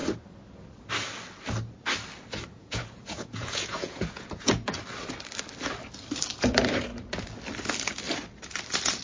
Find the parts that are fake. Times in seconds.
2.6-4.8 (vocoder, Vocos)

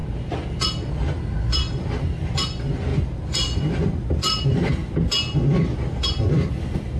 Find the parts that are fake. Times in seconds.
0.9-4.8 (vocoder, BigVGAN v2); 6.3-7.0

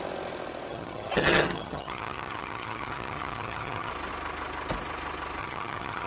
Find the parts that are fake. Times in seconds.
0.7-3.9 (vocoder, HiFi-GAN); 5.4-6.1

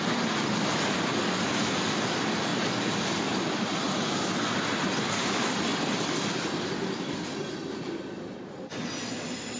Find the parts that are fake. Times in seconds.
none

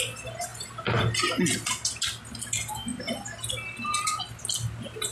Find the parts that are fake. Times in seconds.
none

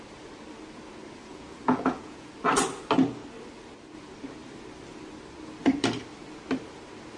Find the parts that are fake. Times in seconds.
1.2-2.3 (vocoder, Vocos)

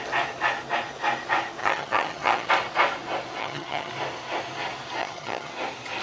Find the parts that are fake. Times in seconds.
1.6-2.5 (vocoder, HiFi-GAN); 3.4-3.9; 5.0-5.5